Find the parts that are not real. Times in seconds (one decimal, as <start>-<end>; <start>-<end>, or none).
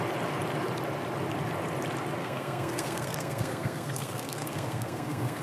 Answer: 2.2-5.4